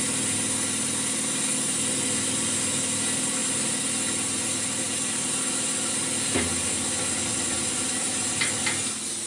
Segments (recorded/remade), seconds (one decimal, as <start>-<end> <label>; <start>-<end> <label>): 0.0-9.3 recorded

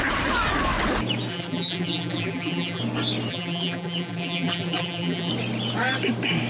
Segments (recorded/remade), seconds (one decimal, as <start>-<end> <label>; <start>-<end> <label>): 0.0-1.3 recorded; 1.3-2.8 remade; 2.8-3.3 recorded; 3.3-5.3 remade; 5.3-6.5 recorded

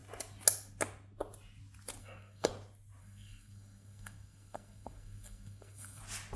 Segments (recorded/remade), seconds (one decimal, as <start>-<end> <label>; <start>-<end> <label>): 0.0-2.0 recorded; 2.0-2.5 remade; 2.5-3.0 recorded; 3.0-6.0 remade; 6.0-6.4 recorded

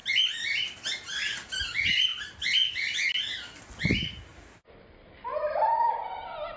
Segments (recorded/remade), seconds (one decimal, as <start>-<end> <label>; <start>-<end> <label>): 0.0-6.6 recorded

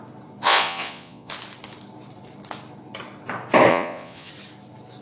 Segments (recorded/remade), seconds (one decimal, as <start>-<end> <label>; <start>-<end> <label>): 0.0-0.4 recorded; 0.4-1.3 remade; 1.3-3.7 recorded; 3.7-4.3 remade; 4.3-5.0 recorded

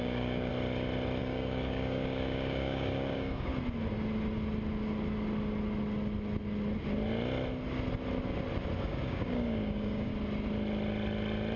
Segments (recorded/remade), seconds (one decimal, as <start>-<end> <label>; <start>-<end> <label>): 0.0-0.5 remade; 0.5-1.2 recorded; 1.2-3.5 remade; 3.5-8.8 recorded; 8.8-10.1 remade; 10.1-11.6 recorded